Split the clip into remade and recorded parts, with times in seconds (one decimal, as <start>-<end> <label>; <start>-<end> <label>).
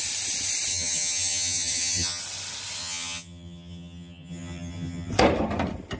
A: 0.0-0.7 recorded; 0.7-2.2 remade; 2.2-2.8 recorded; 2.8-5.1 remade; 5.1-6.0 recorded